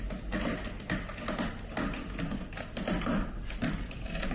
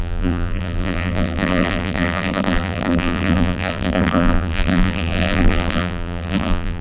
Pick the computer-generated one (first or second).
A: second